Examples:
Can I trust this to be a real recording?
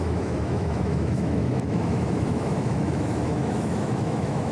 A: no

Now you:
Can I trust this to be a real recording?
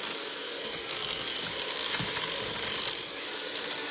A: yes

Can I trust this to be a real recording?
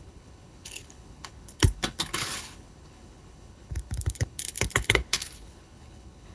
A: no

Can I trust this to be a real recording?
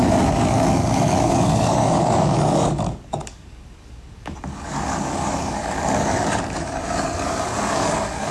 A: no